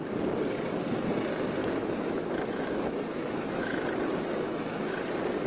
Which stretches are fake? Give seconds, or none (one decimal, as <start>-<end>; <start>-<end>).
1.6-4.9